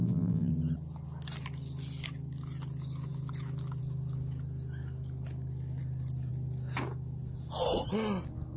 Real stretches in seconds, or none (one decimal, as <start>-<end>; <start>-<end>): 0.5-8.6